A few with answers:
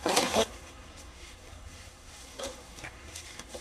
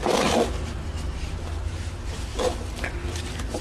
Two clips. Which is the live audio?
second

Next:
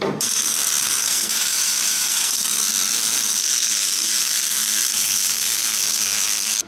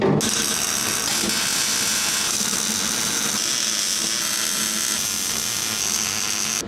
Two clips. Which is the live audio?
second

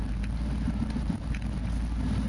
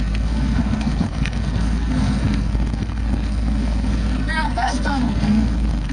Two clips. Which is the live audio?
first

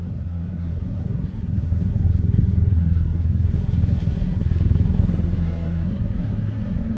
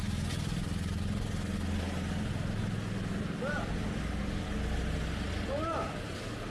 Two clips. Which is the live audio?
second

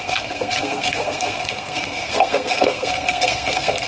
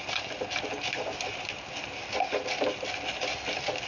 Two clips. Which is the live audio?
second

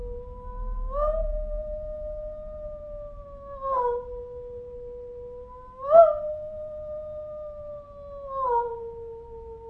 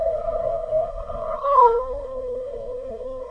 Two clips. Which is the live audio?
first